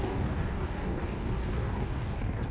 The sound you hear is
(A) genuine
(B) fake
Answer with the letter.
B